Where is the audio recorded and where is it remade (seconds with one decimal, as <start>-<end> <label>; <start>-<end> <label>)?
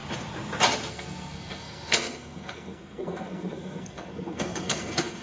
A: 0.0-0.9 recorded; 0.9-5.2 remade